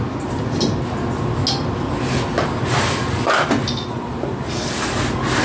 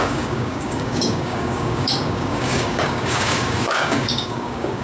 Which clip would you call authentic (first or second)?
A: first